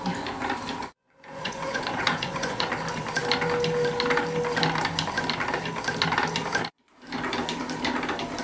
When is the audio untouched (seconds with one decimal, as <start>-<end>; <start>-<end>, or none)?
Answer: 0.0-0.8; 2.7-8.4